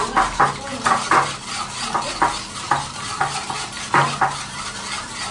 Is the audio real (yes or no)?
yes